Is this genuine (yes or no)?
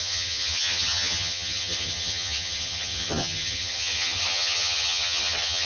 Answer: no